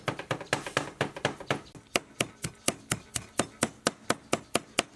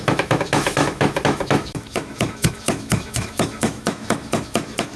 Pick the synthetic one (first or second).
second